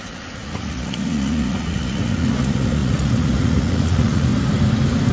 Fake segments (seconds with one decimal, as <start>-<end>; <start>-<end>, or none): 0.0-4.3